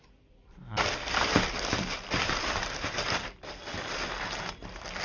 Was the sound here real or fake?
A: fake